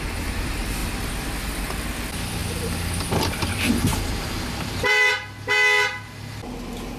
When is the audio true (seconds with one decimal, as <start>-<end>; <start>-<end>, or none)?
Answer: 0.0-3.9; 5.1-7.0